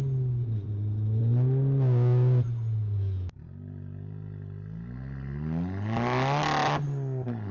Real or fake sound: real